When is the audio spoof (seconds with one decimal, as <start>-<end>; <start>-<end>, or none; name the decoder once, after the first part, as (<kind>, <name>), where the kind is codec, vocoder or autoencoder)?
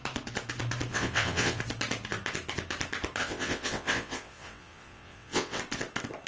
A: 0.9-1.6 (vocoder, WaveNeXt); 3.2-5.6